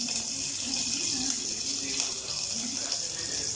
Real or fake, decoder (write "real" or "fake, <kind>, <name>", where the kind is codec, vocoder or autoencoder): real